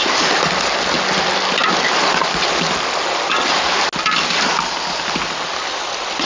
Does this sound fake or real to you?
real